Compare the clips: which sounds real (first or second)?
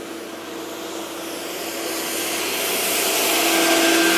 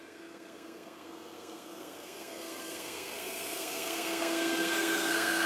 first